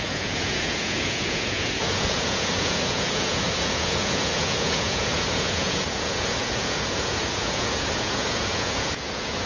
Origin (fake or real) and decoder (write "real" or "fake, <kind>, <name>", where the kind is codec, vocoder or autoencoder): fake, vocoder, Vocos